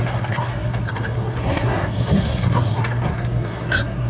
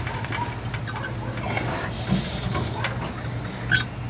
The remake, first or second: first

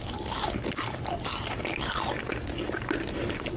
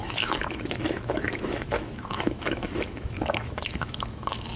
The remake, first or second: second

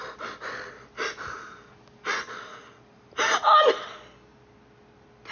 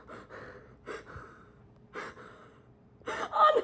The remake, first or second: second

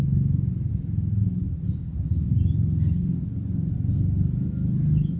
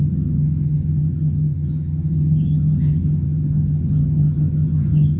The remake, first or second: second